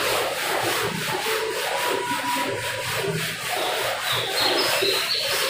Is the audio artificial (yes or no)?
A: no